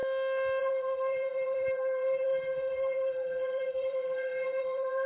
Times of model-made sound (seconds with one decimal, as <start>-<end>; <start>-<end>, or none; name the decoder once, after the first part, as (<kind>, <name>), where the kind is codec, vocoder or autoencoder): 0.6-5.1 (vocoder, BigVGAN v2)